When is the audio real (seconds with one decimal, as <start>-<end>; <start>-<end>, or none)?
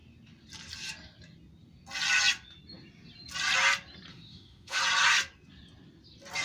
0.0-4.1; 4.8-6.4